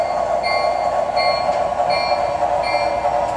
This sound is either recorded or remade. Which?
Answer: recorded